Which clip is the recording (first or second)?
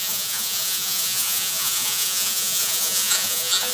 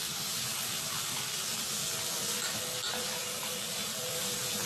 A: second